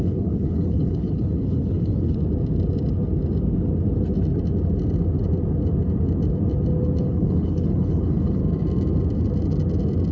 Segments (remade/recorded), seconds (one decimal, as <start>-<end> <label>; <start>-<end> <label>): 0.0-2.2 remade; 2.2-7.0 recorded; 7.0-8.4 remade; 8.4-10.1 recorded